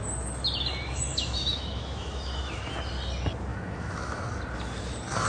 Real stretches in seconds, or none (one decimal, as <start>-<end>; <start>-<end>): 0.0-0.7; 2.8-3.5; 4.2-5.3